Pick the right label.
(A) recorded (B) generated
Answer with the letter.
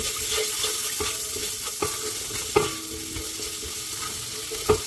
A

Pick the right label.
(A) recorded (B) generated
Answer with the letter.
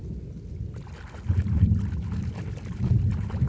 A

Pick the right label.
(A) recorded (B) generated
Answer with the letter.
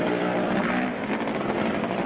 A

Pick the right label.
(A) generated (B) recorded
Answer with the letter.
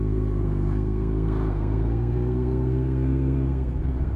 A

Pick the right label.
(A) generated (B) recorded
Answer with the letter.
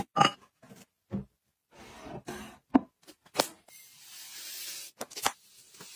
B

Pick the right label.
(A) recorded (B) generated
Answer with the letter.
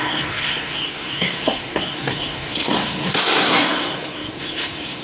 B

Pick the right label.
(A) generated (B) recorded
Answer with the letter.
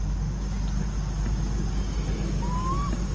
B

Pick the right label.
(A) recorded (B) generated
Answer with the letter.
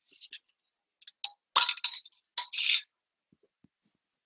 A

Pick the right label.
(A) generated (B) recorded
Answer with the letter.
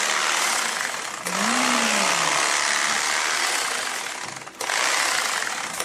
B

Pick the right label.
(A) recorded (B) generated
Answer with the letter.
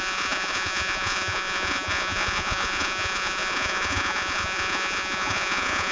B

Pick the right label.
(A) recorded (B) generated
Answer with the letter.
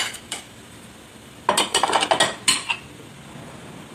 A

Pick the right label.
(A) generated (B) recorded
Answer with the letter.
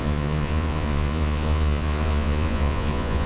A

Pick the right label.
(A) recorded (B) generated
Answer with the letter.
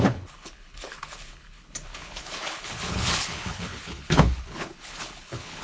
B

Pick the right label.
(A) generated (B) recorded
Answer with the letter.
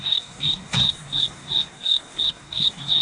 A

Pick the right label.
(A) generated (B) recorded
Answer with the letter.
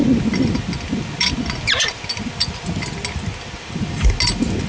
B